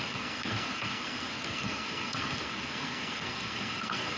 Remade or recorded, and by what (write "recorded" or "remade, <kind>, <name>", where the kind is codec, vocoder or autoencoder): remade, codec, SNAC